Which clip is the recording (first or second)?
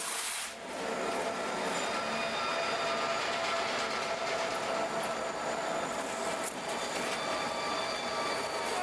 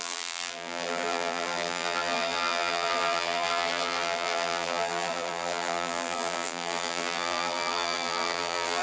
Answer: first